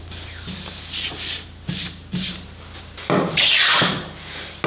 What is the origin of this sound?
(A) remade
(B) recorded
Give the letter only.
B